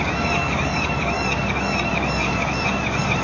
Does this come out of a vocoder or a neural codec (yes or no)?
yes